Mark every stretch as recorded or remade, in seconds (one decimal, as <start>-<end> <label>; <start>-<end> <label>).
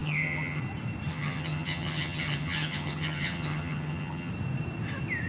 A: 0.0-0.6 remade; 0.6-1.1 recorded; 1.1-4.3 remade; 4.3-5.3 recorded